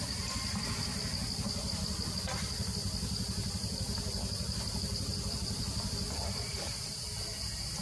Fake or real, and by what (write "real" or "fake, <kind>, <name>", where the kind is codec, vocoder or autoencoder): fake, vocoder, BigVGAN v2